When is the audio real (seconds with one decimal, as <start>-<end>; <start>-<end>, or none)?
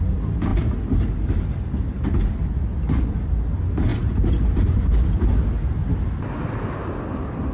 0.0-3.9; 5.3-7.5